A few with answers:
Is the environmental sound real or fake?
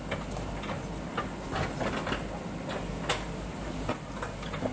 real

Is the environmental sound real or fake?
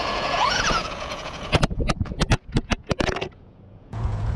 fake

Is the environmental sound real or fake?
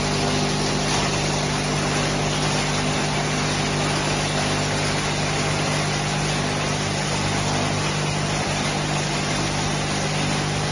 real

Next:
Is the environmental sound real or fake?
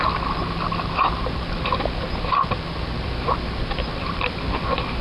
real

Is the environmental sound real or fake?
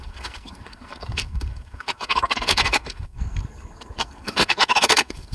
fake